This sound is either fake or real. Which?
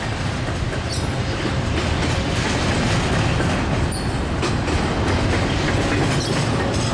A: real